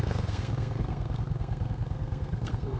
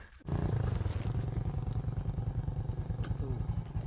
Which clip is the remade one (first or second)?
first